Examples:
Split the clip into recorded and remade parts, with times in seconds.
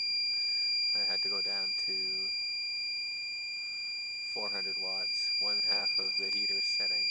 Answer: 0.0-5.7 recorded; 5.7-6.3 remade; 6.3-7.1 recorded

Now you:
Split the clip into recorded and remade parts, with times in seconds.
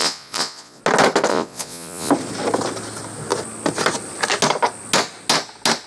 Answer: 0.0-0.8 remade; 0.8-1.3 recorded; 1.3-2.1 remade; 2.1-5.9 recorded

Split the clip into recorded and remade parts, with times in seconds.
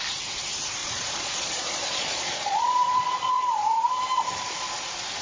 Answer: 0.0-0.8 recorded; 0.8-3.9 remade; 3.9-5.2 recorded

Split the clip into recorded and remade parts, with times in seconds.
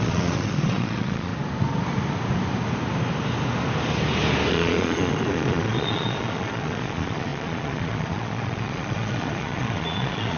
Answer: 0.0-1.3 remade; 1.3-4.5 recorded; 4.5-10.4 remade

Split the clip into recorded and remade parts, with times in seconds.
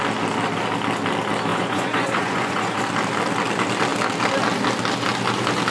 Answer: 0.0-1.5 recorded; 1.5-2.8 remade; 2.8-5.7 recorded